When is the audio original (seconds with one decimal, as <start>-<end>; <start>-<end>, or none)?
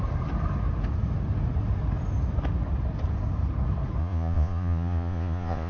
0.0-4.0